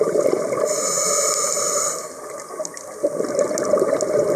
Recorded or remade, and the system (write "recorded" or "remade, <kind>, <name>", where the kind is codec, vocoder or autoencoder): recorded